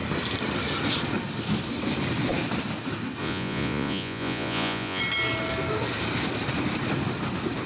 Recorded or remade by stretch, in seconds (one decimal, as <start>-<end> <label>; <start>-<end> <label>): 0.0-3.2 recorded; 3.2-5.0 remade; 5.0-7.7 recorded